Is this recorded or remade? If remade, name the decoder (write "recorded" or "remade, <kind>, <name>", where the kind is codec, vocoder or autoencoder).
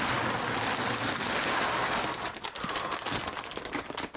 recorded